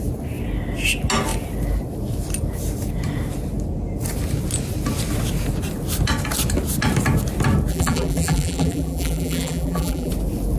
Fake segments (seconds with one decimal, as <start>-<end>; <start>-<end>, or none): 7.7-10.1